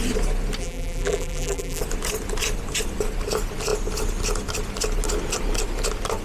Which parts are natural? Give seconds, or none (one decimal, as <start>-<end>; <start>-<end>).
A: 0.0-0.6; 1.8-6.2